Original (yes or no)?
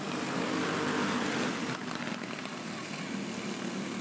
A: yes